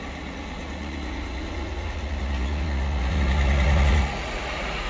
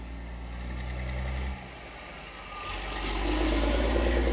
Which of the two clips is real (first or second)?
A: second